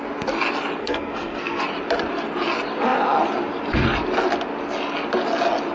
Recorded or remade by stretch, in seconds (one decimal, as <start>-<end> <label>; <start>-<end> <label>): 0.0-0.8 recorded; 0.8-1.6 remade; 1.6-5.7 recorded